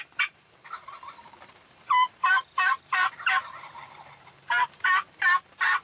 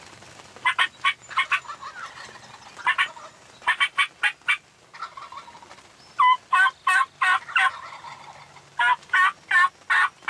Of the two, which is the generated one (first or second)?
first